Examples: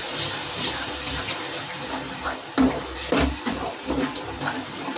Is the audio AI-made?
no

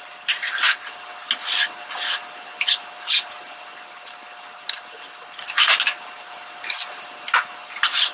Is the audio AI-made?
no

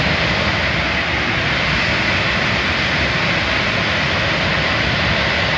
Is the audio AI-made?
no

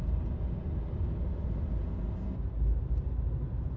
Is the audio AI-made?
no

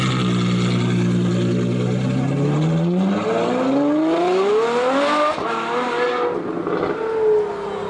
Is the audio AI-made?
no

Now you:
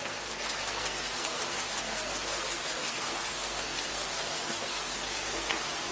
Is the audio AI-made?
yes